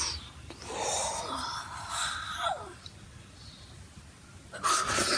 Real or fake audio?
real